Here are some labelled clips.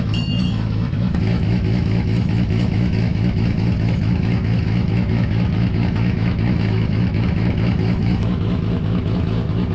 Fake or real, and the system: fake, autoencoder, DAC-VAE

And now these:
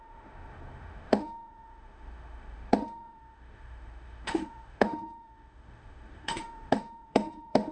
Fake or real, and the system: fake, autoencoder, DAC-VAE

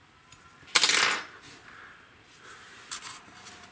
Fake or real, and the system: real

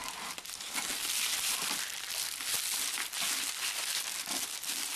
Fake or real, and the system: real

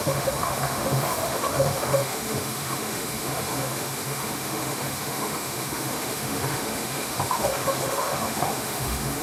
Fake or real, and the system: fake, autoencoder, DAC-VAE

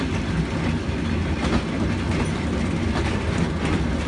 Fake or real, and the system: real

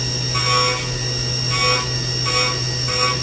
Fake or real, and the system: real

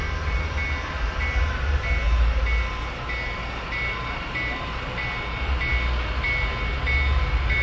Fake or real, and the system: real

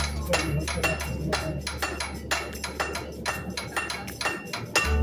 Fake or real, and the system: real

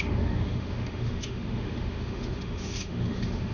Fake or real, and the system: fake, autoencoder, DAC-VAE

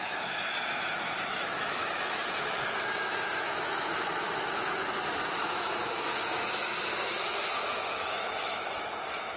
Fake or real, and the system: fake, autoencoder, DAC-VAE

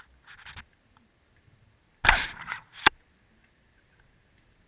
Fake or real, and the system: real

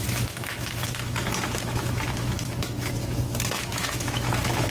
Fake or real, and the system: fake, autoencoder, DAC-VAE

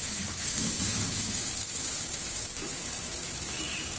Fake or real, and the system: fake, autoencoder, DAC-VAE